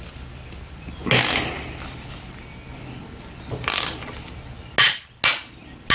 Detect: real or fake real